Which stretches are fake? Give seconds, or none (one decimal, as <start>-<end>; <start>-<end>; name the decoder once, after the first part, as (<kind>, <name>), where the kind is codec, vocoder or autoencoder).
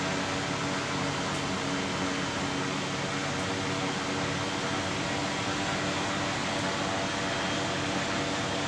none